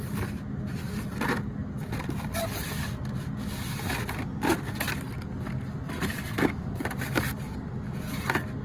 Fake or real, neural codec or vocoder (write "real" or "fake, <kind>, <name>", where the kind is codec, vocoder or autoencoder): real